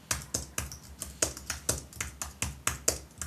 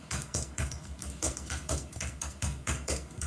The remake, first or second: second